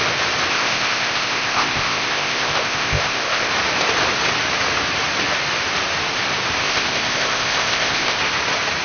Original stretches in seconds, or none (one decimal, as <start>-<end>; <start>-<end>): 0.0-0.5; 3.5-6.6; 8.2-8.8